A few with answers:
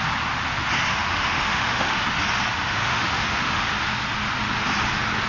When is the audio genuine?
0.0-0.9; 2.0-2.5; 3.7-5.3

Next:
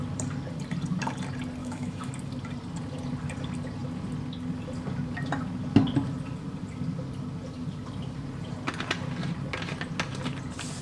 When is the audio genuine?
0.0-1.6; 2.1-10.8